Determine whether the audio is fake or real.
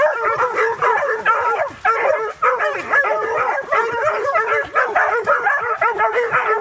real